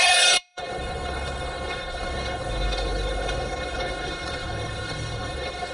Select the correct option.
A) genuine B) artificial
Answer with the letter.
B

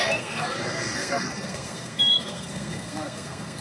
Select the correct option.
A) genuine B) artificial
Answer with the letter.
B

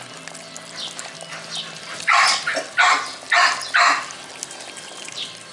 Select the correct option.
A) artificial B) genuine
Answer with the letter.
B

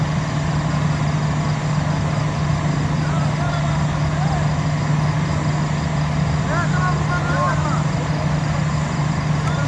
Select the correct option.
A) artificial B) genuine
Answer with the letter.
B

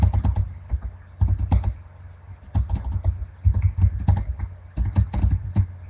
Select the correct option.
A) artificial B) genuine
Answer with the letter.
B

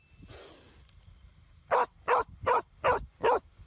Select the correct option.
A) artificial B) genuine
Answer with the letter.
B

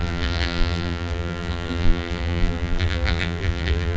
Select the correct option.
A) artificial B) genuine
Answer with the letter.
A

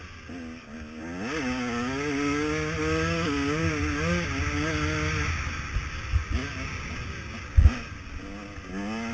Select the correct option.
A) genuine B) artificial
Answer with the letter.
A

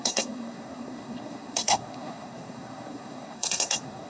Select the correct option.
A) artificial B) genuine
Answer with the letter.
A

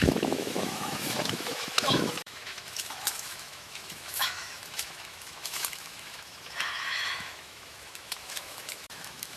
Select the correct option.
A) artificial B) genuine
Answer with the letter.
A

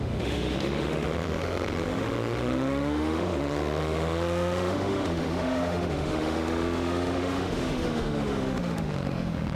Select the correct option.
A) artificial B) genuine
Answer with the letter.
A